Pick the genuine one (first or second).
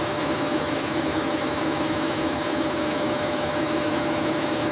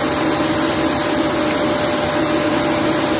second